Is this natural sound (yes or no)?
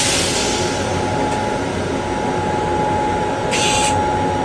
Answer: yes